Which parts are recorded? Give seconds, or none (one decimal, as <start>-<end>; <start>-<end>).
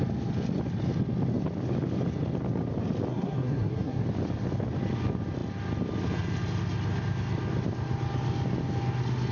0.0-3.1; 4.0-9.3